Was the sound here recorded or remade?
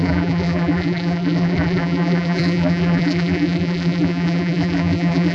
remade